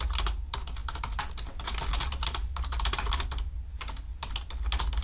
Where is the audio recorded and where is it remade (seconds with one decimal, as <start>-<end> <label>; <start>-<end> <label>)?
0.0-5.0 recorded